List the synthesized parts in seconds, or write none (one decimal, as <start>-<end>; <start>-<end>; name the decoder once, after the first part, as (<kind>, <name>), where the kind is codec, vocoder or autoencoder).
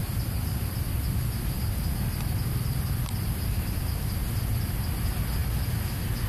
0.0-3.8 (vocoder, BigVGAN v2)